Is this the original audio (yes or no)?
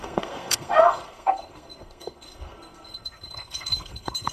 no